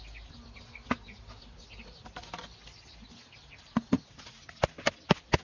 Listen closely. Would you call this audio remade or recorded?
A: recorded